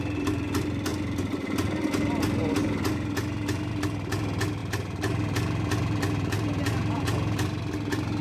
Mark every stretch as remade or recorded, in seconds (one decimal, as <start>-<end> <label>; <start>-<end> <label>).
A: 0.0-8.2 recorded